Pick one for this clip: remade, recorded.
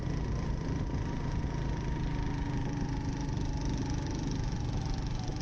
recorded